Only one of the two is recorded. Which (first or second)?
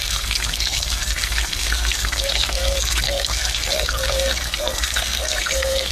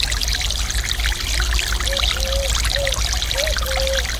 second